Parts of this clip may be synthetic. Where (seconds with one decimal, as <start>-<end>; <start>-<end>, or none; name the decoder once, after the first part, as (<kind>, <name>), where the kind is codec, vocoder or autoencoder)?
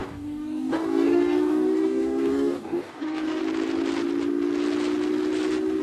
0.0-3.4 (codec, DAC)